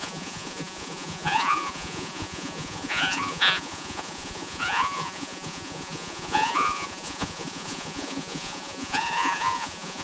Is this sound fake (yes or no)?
yes